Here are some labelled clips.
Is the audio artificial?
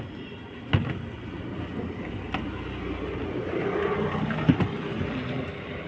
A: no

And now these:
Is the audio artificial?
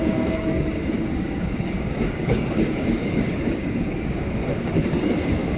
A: yes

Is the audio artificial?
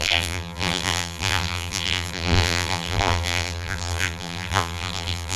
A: yes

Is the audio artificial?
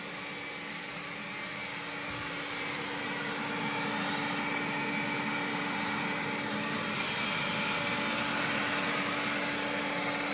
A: no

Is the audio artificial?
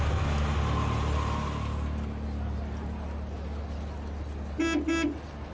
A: no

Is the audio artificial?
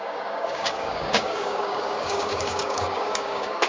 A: yes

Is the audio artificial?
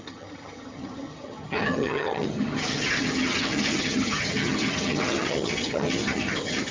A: yes